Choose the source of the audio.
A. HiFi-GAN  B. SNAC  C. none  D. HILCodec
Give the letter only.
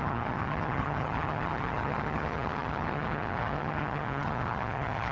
A